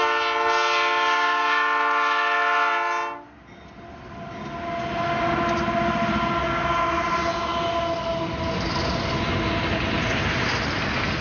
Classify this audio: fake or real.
real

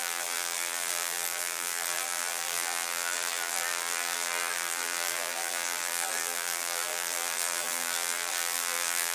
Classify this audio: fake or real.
fake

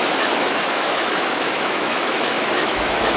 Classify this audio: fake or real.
fake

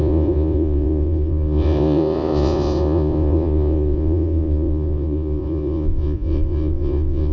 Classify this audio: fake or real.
fake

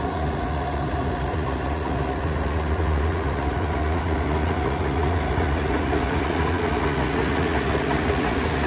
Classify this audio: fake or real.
fake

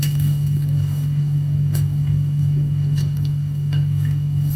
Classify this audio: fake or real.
fake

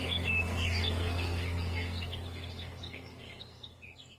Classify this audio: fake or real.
fake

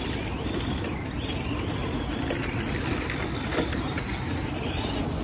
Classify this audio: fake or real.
real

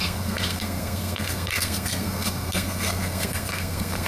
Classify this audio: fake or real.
fake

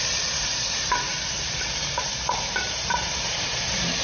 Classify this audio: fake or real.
fake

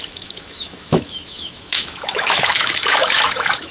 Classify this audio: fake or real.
fake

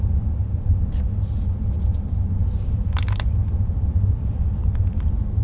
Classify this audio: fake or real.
real